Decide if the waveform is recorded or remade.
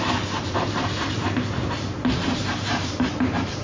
remade